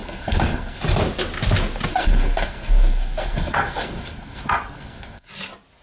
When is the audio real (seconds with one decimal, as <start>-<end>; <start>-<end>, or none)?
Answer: 0.8-1.9; 5.3-5.8

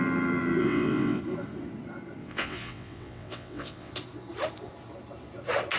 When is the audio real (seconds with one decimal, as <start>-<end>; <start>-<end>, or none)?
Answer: 0.0-0.6; 1.2-2.2; 3.9-5.8

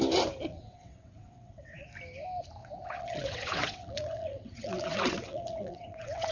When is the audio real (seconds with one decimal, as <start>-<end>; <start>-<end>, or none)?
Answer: 0.0-0.5; 1.9-2.6

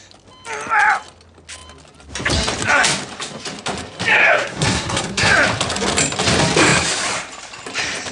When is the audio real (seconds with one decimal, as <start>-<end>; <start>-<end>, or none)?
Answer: 0.0-4.1; 5.3-8.1

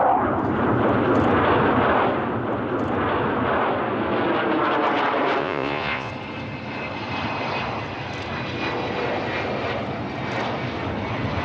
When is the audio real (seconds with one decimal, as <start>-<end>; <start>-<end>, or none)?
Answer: 0.0-5.4; 6.1-11.4

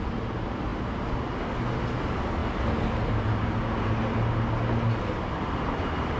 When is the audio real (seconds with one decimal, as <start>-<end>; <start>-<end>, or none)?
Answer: 0.0-6.2

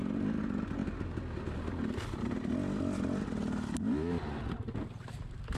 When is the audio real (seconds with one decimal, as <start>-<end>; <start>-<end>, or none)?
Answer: 0.0-5.6